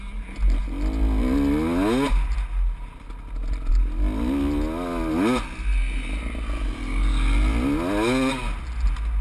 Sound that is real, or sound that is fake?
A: real